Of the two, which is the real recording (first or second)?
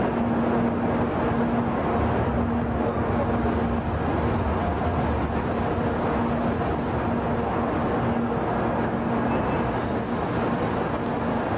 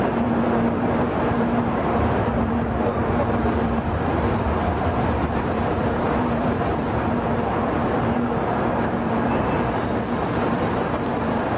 first